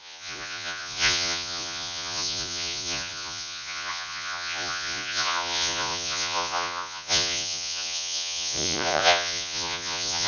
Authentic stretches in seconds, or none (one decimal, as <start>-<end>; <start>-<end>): none